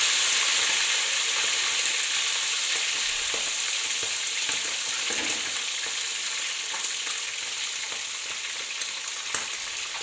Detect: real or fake real